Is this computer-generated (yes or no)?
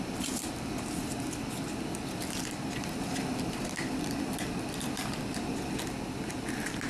yes